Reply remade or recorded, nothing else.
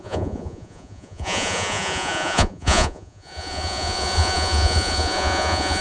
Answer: remade